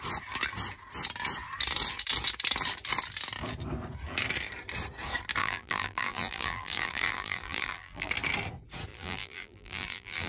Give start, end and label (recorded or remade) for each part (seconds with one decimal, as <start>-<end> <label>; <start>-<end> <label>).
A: 0.0-5.4 recorded; 5.4-8.1 remade; 8.1-8.9 recorded; 8.9-10.3 remade